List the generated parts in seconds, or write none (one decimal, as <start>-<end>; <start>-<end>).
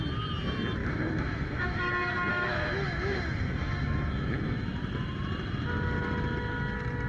0.8-1.9; 2.3-4.7